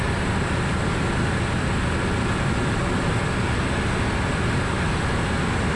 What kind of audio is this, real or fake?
real